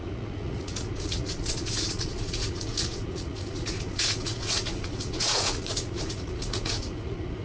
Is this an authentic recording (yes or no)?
no